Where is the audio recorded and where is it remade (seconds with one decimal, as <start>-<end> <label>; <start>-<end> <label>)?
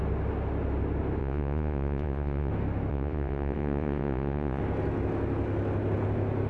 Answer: 0.0-1.2 recorded; 1.2-2.5 remade; 2.5-2.9 recorded; 2.9-4.6 remade; 4.6-6.5 recorded